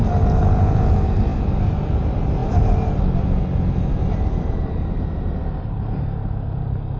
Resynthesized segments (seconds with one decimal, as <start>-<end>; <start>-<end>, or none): none